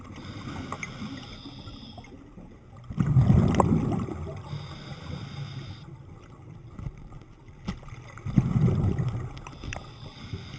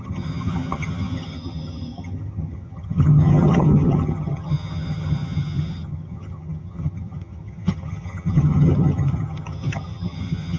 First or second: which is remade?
second